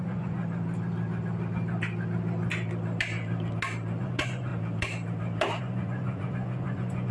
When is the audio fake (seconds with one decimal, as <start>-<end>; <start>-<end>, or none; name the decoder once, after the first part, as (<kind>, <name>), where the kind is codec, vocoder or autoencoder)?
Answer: 0.0-0.4 (vocoder, Vocos); 4.0-4.5; 5.6-7.1